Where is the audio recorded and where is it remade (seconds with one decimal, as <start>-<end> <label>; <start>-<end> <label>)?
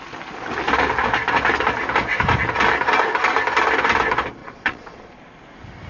0.0-4.4 recorded; 4.4-5.3 remade; 5.3-5.9 recorded